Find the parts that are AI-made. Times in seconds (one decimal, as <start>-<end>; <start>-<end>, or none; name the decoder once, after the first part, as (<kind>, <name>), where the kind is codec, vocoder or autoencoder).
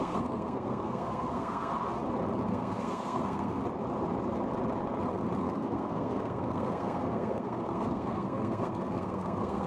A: 0.0-1.7 (codec, SNAC); 2.5-3.6; 5.4-9.7